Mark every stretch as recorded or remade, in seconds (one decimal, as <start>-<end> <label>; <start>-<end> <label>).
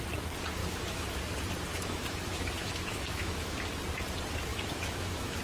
0.0-0.6 recorded; 0.6-1.2 remade; 1.2-1.7 recorded; 1.7-3.6 remade; 3.6-4.5 recorded; 4.5-5.4 remade